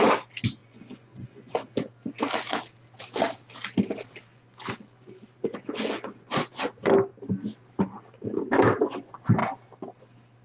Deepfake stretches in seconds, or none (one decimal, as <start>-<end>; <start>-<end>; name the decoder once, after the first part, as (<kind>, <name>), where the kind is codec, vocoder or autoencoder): 0.6-1.9 (vocoder, Vocos); 4.3-6.6